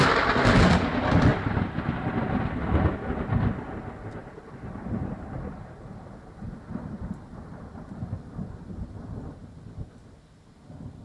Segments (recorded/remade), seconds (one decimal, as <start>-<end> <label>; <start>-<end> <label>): 0.0-1.3 recorded; 1.3-2.1 remade; 2.1-4.2 recorded; 4.2-9.2 remade; 9.2-11.0 recorded